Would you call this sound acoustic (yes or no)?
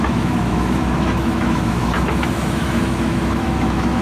no